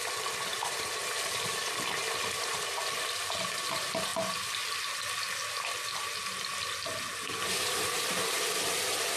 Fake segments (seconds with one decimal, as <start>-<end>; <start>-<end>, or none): none